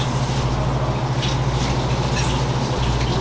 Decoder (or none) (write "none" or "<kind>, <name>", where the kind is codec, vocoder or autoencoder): none